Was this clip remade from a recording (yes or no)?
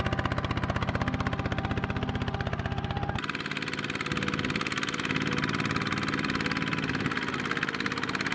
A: no